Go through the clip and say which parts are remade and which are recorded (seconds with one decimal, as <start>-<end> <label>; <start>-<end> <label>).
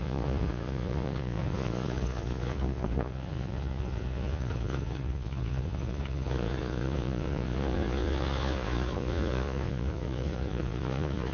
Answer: 0.0-11.3 remade